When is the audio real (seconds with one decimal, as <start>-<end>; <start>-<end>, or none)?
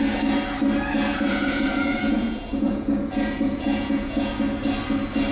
0.0-1.1; 4.3-5.3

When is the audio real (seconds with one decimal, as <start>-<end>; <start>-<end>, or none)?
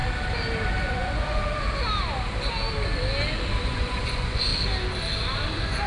0.0-0.9; 1.4-3.6; 4.5-5.5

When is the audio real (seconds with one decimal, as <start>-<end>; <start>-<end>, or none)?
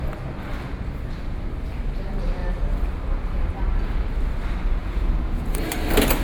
0.0-4.8; 5.5-6.2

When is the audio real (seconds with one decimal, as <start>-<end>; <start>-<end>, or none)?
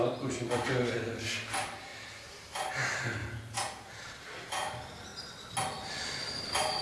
0.0-3.2; 4.0-6.8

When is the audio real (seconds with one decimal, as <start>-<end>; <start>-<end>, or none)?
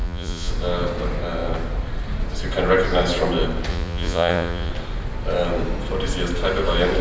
0.5-3.7; 4.7-7.0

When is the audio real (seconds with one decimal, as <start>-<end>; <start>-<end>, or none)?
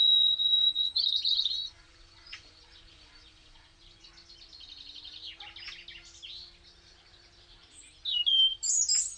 4.1-9.2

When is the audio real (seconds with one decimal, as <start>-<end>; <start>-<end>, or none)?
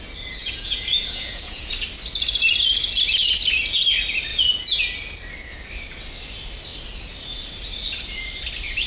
0.0-0.4; 1.7-4.3; 4.8-8.9